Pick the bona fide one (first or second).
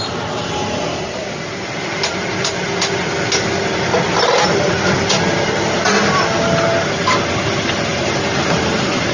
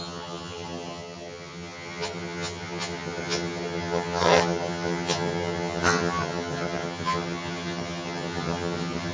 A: first